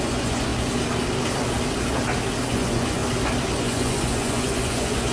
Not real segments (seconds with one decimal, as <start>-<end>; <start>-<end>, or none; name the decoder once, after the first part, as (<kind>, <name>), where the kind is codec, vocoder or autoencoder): 0.0-0.5 (vocoder, Vocos); 2.5-3.0; 3.6-5.1